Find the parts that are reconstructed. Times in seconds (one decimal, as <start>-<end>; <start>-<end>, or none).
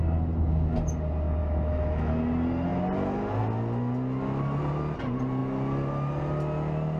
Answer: 1.4-2.1